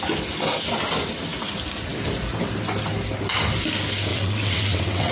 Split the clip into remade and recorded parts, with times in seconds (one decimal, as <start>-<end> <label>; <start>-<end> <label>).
0.0-4.1 recorded; 4.1-5.1 remade